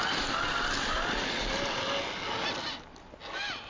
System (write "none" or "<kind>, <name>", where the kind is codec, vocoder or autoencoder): none